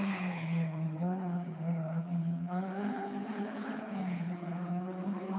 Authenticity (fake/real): fake